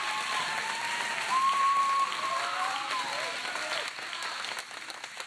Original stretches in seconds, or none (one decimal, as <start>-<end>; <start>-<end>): 0.0-5.3